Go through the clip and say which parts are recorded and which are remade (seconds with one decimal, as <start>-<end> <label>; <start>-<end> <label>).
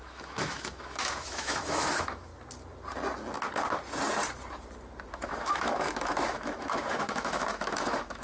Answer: 0.0-2.3 remade; 2.3-5.1 recorded; 5.1-8.2 remade